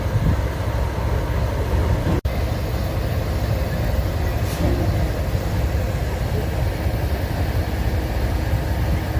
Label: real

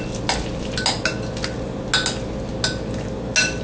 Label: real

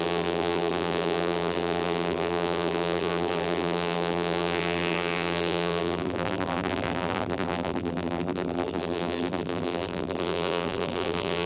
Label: fake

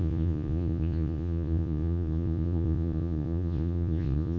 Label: fake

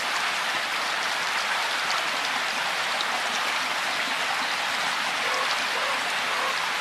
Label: real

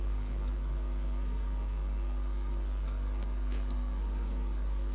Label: fake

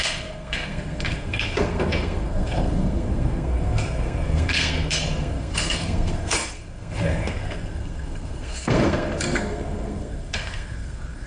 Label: fake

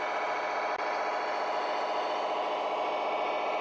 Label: real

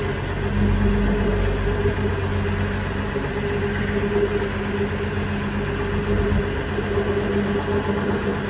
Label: real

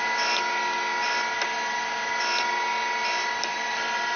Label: real